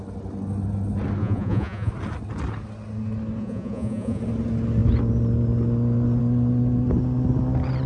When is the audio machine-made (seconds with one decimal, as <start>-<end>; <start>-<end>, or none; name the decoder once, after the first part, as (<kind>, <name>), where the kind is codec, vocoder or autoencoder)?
1.2-1.9 (vocoder, Vocos); 3.4-4.2